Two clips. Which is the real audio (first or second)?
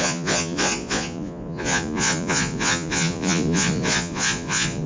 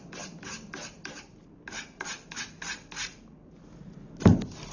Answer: second